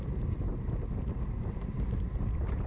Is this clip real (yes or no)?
yes